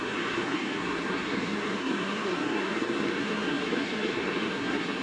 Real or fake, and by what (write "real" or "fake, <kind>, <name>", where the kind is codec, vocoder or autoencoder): fake, codec, SNAC